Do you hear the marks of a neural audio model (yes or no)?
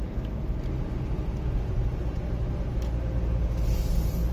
no